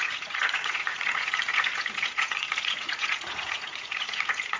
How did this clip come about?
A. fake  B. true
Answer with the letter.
A